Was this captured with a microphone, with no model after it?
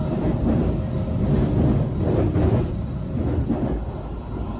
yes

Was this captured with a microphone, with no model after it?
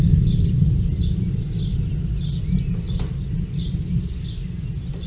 yes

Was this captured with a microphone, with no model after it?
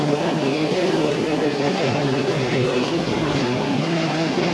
no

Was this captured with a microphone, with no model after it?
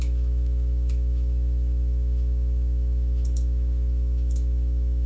no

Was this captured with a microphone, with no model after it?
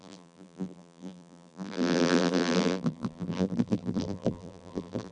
no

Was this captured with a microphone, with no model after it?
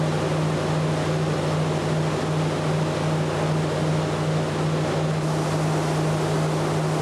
yes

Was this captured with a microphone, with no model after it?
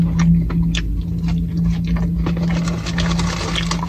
yes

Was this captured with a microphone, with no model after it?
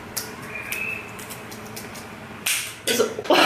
no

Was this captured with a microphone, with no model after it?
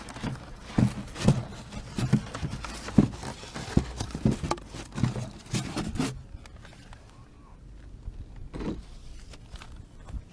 yes